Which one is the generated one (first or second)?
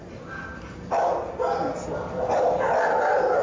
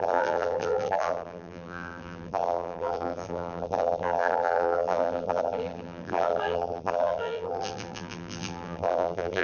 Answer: second